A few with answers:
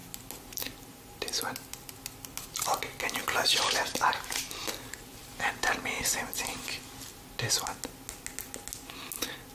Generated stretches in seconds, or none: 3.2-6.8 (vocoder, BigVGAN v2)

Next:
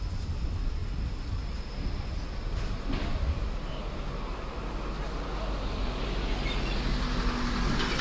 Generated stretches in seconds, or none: none

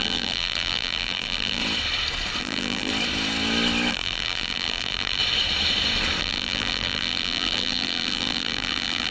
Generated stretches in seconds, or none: 0.0-1.6 (vocoder, BigVGAN v2); 2.4-2.9; 3.9-5.2; 6.2-9.1

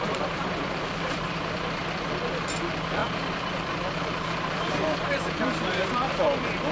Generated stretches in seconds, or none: 0.0-1.8 (vocoder, BigVGAN v2); 2.5-6.7

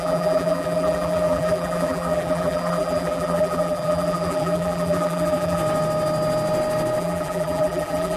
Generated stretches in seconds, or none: 0.0-5.6 (vocoder, BigVGAN v2); 7.0-8.2

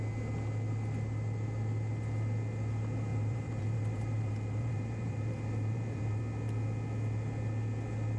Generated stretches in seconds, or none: 3.1-6.2 (vocoder, BigVGAN v2)

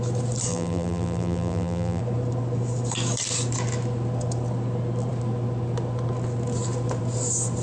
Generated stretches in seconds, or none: 0.5-2.0 (vocoder, BigVGAN v2)